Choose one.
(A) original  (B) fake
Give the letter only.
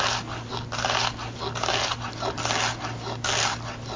A